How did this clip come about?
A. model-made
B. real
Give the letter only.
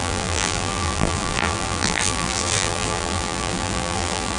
A